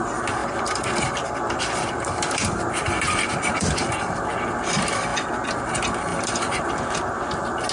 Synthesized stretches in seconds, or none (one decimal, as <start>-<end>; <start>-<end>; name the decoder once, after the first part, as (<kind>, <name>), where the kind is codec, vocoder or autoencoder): 0.4-4.2 (vocoder, BigVGAN v2); 6.1-6.6

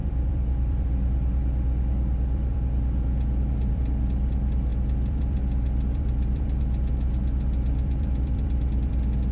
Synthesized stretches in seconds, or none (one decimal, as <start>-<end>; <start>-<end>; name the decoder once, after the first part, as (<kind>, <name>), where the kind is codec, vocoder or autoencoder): 0.0-9.3 (vocoder, BigVGAN v2)

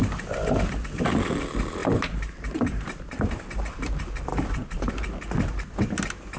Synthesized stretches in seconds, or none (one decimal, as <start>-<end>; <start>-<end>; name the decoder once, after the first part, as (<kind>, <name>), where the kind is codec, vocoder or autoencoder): 1.8-3.6 (vocoder, BigVGAN v2); 4.3-4.9